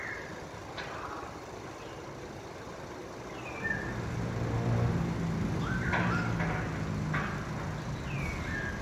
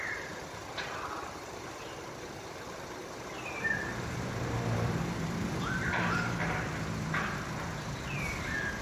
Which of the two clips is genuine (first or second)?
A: first